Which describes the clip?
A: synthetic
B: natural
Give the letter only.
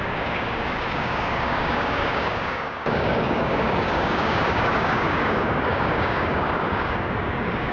A